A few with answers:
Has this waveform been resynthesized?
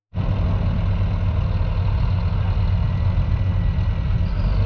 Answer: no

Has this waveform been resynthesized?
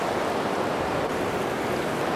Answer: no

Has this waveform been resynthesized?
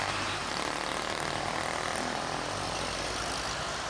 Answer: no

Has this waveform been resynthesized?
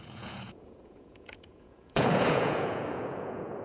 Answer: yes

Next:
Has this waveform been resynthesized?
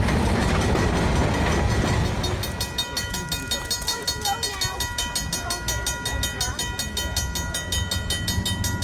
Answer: no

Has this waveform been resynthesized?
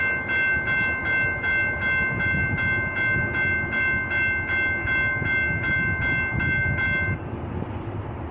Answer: no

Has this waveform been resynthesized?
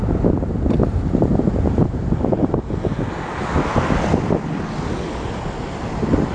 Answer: no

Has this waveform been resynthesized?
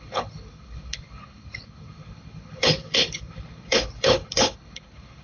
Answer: yes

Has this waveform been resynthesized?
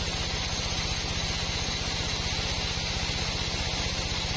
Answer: no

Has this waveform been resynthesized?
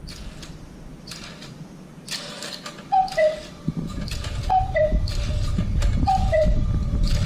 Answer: yes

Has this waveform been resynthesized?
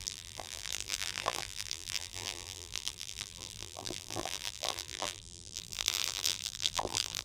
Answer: yes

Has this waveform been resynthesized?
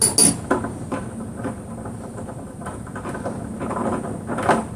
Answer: no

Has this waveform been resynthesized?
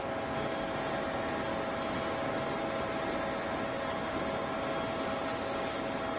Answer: no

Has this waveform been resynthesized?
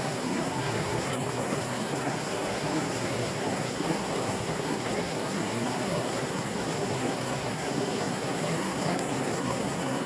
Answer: yes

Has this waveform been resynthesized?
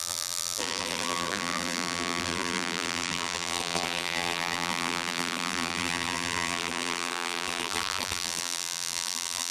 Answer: yes